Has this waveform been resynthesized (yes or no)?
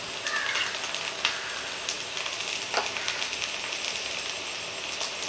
no